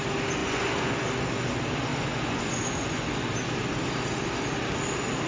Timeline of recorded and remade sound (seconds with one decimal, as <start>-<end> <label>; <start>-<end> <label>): 0.0-0.4 recorded; 0.4-1.0 remade; 1.0-1.9 recorded; 1.9-3.1 remade; 3.1-5.3 recorded